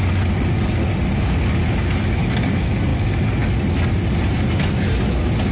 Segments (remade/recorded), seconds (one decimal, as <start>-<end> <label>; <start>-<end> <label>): 0.0-5.5 recorded